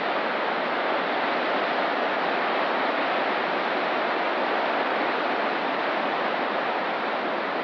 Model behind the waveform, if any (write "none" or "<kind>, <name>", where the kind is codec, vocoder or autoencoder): none